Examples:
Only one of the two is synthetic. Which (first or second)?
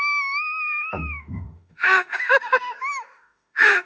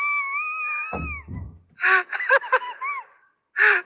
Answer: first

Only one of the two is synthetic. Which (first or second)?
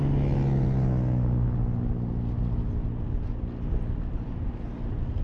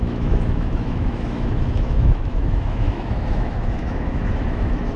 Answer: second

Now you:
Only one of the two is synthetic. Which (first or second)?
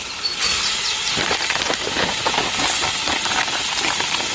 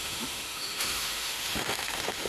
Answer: second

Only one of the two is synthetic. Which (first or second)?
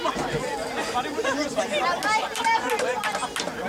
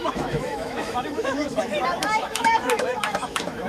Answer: second